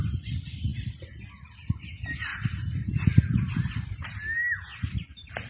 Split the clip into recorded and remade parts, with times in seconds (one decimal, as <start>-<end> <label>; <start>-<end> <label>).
0.0-5.5 recorded